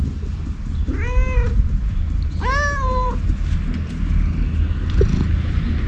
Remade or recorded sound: recorded